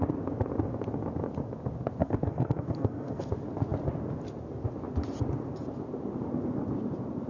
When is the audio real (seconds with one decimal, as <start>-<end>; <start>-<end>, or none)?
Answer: 0.0-2.0; 3.3-7.3